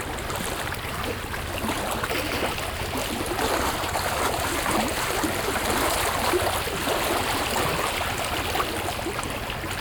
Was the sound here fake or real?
real